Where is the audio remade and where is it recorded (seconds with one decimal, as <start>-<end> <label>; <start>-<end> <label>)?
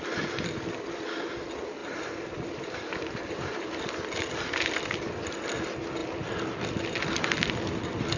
0.0-1.8 recorded; 1.8-3.8 remade; 3.8-8.2 recorded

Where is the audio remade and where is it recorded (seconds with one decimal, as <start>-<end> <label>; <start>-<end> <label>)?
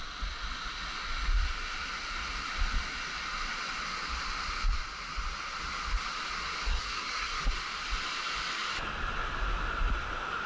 0.0-6.7 recorded; 6.7-7.4 remade; 7.4-10.5 recorded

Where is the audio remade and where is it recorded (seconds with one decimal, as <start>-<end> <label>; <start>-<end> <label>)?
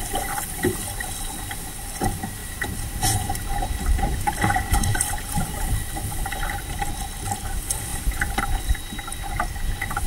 0.0-2.4 recorded; 2.4-5.7 remade; 5.7-7.9 recorded; 7.9-8.4 remade; 8.4-10.1 recorded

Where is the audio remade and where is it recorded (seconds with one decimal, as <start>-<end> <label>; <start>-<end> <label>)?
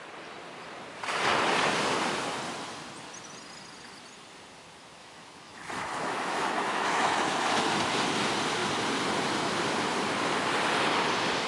0.0-5.0 recorded; 5.0-7.3 remade; 7.3-11.5 recorded